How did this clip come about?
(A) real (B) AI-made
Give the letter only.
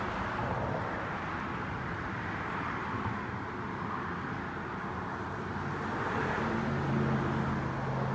A